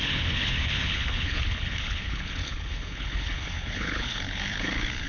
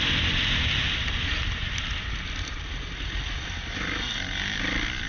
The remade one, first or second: first